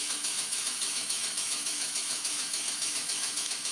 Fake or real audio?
fake